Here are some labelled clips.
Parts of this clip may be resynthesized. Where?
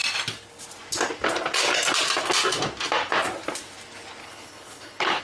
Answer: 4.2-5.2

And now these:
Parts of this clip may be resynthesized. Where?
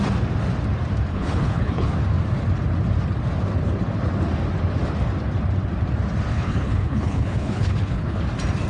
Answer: 1.1-1.9; 6.3-8.2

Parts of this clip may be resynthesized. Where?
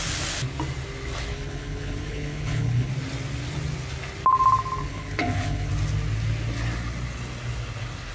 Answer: 1.3-2.9; 4.8-5.7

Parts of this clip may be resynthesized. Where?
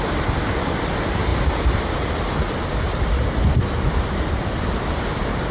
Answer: none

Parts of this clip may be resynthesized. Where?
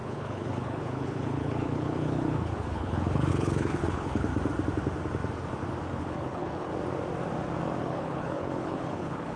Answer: 0.0-4.3; 6.0-6.7; 7.8-9.4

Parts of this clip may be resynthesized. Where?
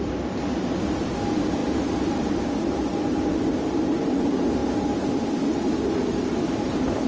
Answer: none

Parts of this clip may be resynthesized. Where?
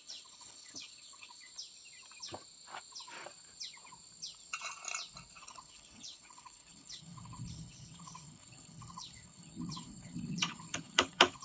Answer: 0.0-1.5; 5.4-11.4